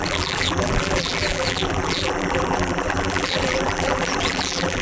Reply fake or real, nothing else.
fake